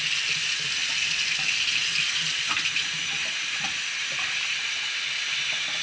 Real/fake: real